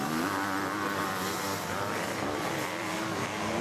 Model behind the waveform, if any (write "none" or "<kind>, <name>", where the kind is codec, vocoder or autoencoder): none